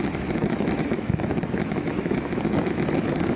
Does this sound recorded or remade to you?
remade